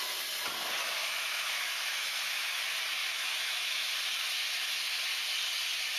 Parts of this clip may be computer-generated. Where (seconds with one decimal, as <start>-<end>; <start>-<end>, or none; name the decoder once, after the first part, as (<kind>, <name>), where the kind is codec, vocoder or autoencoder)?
1.0-2.6 (autoencoder, DAC-VAE); 3.0-3.9